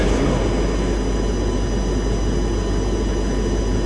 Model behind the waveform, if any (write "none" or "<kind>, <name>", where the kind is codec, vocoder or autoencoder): none